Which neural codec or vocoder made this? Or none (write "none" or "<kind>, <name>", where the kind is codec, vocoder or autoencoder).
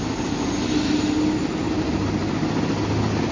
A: none